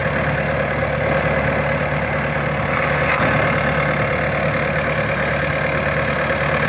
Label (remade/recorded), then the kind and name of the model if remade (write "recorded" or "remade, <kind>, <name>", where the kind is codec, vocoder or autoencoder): recorded